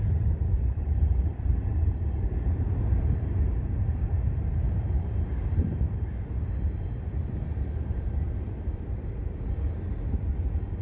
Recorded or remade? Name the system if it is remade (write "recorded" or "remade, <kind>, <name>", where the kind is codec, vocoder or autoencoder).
remade, vocoder, BigVGAN v2